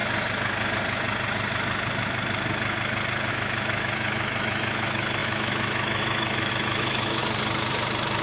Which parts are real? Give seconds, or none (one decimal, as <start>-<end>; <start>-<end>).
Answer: 0.0-3.3; 7.2-8.2